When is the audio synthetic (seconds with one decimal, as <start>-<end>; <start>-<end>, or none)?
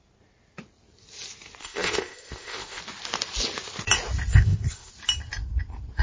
1.6-2.8; 4.3-4.9